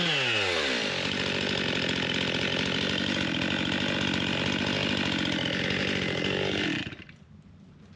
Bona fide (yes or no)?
yes